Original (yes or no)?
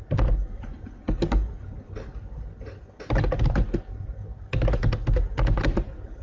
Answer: yes